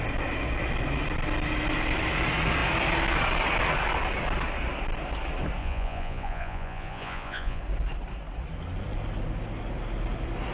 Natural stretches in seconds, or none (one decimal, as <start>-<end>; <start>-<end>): 0.0-5.6; 7.6-10.5